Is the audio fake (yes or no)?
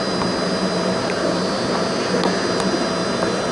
no